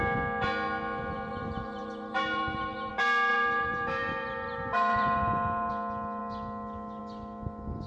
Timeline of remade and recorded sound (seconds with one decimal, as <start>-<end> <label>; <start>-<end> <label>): 0.0-1.3 recorded; 1.3-2.9 remade; 2.9-3.3 recorded; 3.3-5.7 remade; 5.7-7.9 recorded